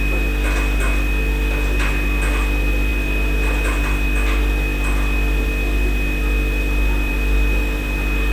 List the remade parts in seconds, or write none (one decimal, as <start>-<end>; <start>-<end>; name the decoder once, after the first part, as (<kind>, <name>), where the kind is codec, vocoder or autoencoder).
none